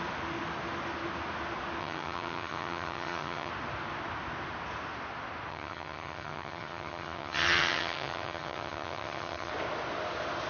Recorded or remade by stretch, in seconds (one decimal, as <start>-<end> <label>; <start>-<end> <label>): 0.0-1.8 recorded; 1.8-3.5 remade; 3.5-5.5 recorded; 5.5-9.5 remade; 9.5-10.5 recorded